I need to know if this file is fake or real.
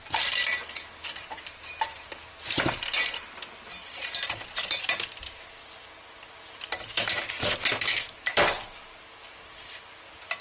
real